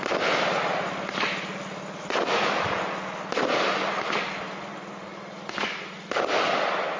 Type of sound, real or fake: real